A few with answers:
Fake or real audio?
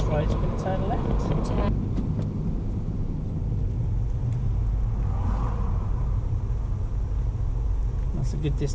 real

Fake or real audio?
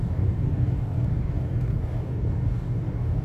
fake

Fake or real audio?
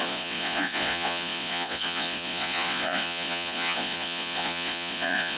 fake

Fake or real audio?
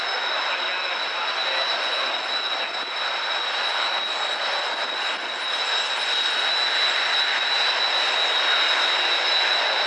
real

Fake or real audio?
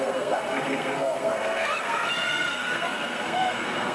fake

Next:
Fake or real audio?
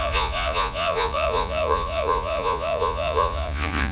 fake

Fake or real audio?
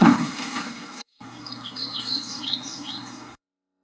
fake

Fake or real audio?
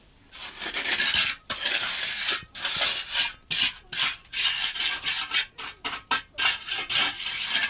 real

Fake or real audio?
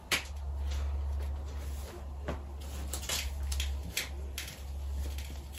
real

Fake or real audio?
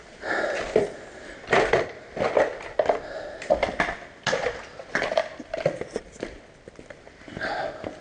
real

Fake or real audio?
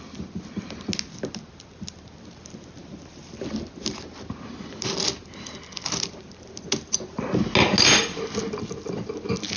real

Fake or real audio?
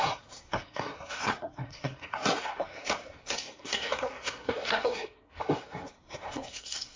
fake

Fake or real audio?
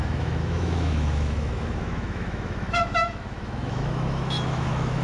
fake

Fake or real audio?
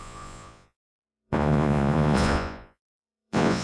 fake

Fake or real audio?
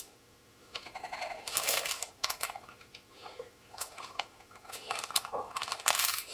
fake